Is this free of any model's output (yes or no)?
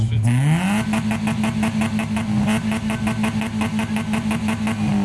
yes